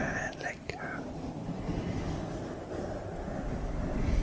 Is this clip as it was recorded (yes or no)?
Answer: yes